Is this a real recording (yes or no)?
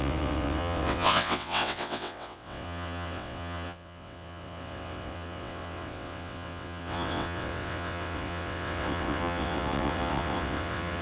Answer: no